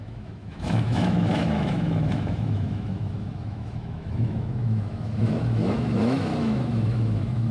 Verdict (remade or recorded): remade